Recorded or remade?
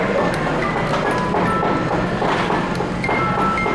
recorded